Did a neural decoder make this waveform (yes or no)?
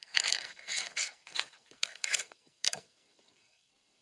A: yes